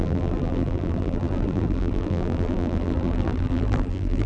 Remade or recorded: remade